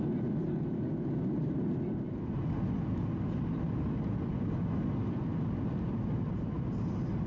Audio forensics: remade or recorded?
recorded